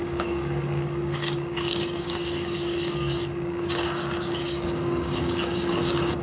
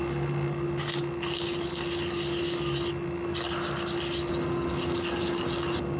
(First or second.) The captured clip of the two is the second